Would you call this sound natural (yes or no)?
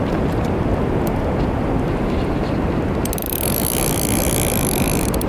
yes